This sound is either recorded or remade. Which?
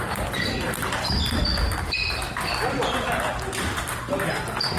remade